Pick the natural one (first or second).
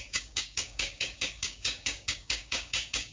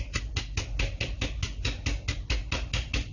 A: second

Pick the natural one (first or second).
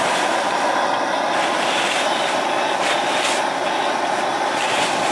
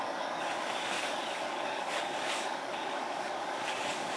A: first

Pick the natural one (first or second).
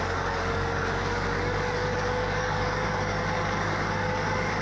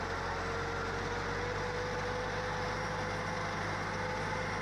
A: second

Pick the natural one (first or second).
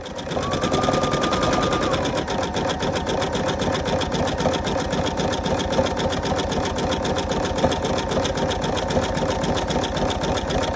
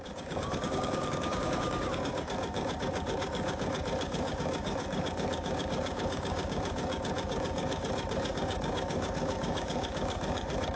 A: first